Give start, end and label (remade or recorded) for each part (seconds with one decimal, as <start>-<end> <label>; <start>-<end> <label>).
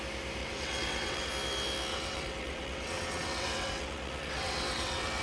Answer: 0.0-0.4 recorded; 0.4-1.3 remade; 1.3-1.9 recorded; 1.9-5.2 remade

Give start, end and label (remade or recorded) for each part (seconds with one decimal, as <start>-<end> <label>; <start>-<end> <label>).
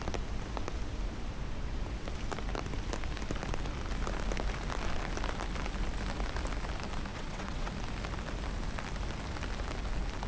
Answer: 0.0-7.1 recorded; 7.1-7.7 remade; 7.7-10.3 recorded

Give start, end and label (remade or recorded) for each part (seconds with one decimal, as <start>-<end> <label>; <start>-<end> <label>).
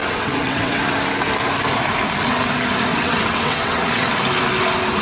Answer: 0.0-0.8 remade; 0.8-2.9 recorded; 2.9-4.1 remade; 4.1-5.0 recorded